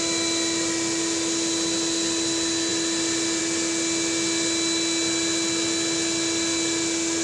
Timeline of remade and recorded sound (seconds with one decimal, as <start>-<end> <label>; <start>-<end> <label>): 0.0-7.2 recorded